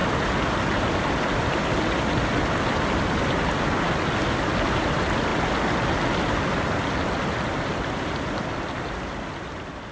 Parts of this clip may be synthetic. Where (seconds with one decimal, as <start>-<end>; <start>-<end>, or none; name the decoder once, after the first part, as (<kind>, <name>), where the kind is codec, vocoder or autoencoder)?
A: none